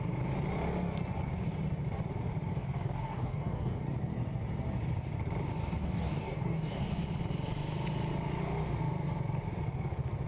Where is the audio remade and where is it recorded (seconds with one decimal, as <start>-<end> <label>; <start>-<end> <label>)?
0.0-2.5 recorded; 2.5-3.8 remade; 3.8-5.8 recorded; 5.8-6.8 remade; 6.8-10.3 recorded